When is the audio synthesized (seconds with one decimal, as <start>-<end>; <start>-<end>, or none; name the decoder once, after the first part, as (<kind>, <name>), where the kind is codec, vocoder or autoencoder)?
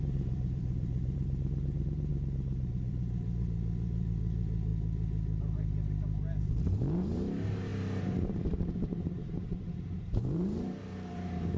0.0-2.1 (vocoder, BigVGAN v2); 2.7-4.7; 6.4-11.6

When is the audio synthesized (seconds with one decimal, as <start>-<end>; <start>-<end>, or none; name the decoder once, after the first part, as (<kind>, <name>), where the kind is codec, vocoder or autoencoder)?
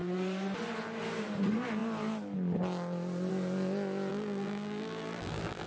4.1-5.7 (vocoder, BigVGAN v2)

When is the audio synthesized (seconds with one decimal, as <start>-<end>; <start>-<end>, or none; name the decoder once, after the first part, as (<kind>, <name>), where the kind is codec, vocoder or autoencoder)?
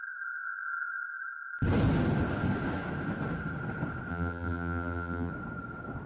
4.1-5.3 (vocoder, BigVGAN v2)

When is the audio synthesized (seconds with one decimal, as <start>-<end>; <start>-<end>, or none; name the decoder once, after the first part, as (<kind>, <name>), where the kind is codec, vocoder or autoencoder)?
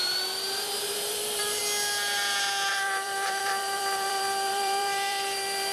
0.8-1.6 (vocoder, BigVGAN v2); 2.7-5.7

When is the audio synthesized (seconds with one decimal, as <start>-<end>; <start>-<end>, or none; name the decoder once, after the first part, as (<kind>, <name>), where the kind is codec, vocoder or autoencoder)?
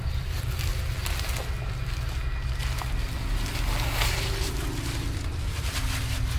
0.0-0.7 (vocoder, BigVGAN v2); 4.5-6.4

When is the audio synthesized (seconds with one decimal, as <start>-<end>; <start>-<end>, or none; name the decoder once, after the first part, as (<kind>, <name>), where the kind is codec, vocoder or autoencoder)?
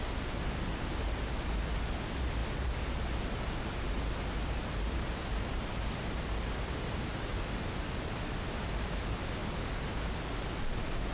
9.4-10.2 (vocoder, BigVGAN v2)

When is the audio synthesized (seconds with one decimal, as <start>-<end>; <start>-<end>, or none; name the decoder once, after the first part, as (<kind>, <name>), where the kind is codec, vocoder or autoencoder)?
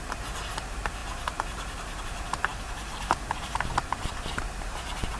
0.0-5.2 (vocoder, BigVGAN v2)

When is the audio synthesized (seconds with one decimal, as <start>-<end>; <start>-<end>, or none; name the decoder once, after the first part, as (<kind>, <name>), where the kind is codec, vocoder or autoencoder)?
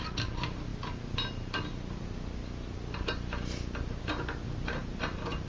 none